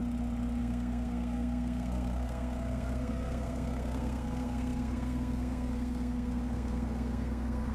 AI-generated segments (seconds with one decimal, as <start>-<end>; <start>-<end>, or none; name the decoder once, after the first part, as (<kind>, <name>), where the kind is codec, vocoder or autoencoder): 0.6-7.7 (codec, SNAC)